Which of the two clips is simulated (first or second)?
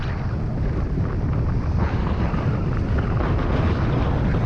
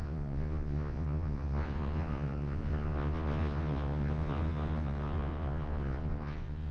second